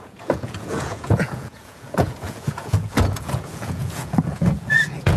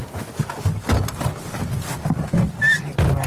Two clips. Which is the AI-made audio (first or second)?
first